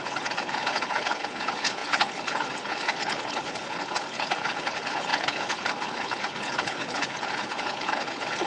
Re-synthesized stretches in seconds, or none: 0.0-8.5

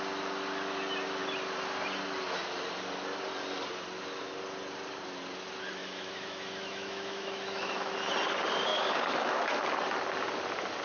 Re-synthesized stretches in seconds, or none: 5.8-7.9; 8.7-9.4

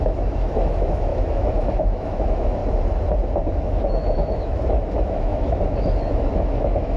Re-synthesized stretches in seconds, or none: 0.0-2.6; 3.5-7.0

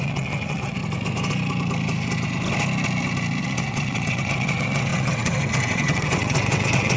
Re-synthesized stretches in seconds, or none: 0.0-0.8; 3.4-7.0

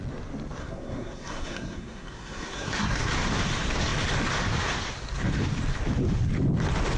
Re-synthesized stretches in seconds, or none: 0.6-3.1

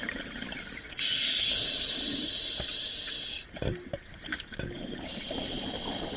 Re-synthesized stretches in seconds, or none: 1.1-2.0; 2.8-5.5

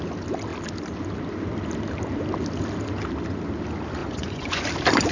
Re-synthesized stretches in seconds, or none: 4.0-4.6